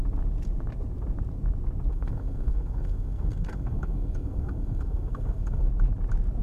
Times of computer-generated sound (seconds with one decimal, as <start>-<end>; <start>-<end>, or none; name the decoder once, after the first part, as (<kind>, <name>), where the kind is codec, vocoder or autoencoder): 1.9-5.7 (codec, SNAC)